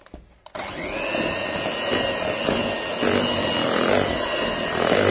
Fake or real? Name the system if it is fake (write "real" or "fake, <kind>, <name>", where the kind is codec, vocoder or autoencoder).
real